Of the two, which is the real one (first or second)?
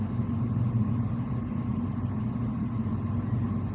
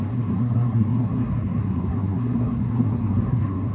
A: first